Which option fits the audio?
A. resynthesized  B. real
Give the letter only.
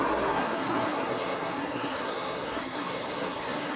A